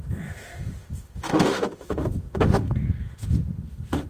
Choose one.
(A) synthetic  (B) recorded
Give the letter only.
A